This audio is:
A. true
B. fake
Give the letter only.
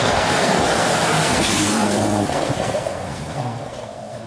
B